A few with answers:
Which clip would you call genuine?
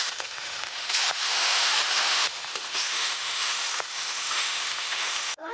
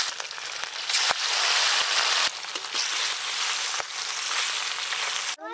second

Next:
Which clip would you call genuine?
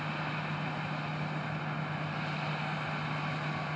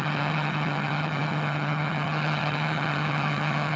first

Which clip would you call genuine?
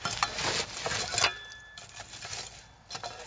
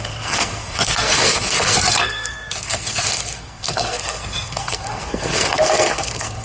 first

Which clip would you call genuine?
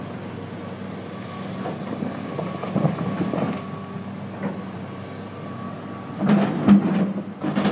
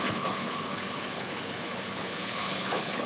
first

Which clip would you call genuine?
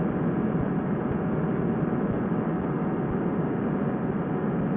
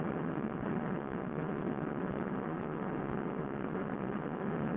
first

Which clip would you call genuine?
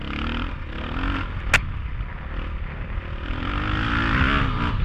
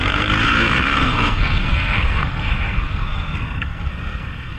first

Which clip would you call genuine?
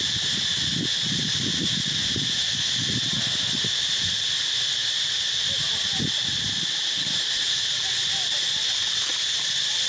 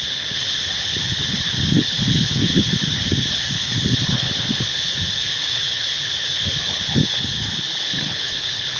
first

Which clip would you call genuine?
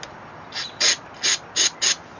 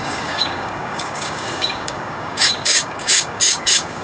first